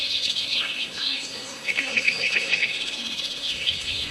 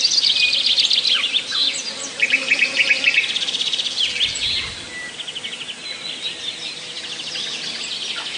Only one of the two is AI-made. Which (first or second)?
first